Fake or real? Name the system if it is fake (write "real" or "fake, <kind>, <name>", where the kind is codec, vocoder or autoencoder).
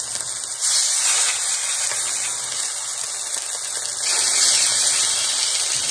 real